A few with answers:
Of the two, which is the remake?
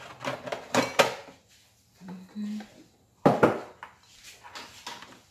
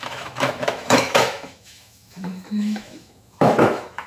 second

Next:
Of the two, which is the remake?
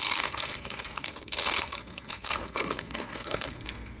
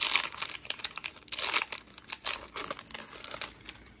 first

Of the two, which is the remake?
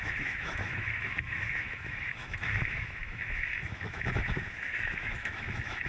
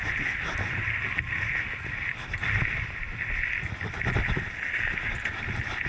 first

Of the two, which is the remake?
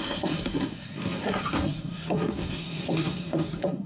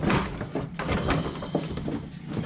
first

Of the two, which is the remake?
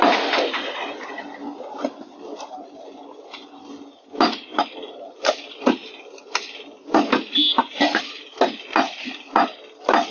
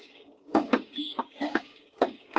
second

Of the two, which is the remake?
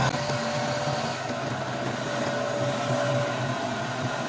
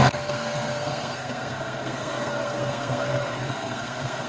second